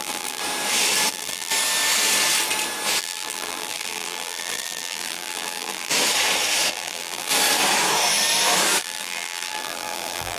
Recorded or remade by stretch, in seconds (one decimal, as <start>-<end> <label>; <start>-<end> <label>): 0.0-0.4 remade; 0.4-1.1 recorded; 1.1-1.5 remade; 1.5-3.0 recorded; 3.0-5.9 remade; 5.9-6.7 recorded; 6.7-7.3 remade; 7.3-8.8 recorded; 8.8-10.4 remade